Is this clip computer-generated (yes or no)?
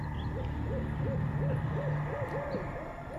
no